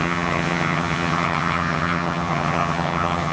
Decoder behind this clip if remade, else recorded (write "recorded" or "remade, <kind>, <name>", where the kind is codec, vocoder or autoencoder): remade, vocoder, HiFi-GAN